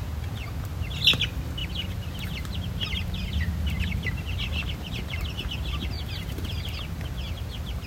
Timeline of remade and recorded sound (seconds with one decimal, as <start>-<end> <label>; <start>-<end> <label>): 0.0-1.6 recorded; 1.6-6.3 remade; 6.3-7.9 recorded